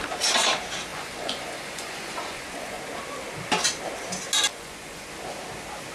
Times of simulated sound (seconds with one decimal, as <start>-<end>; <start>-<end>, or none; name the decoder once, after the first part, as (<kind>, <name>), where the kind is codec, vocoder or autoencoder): 0.9-2.8 (vocoder, Vocos); 4.5-5.1